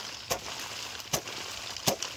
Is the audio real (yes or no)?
yes